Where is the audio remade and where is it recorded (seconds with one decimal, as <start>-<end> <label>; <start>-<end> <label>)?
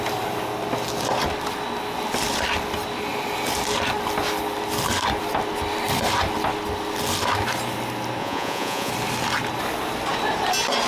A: 0.0-8.2 recorded; 8.2-8.9 remade; 8.9-10.9 recorded